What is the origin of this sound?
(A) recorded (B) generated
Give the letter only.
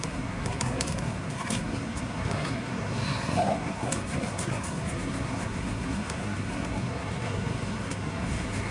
B